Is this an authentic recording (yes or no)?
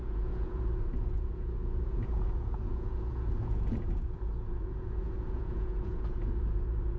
no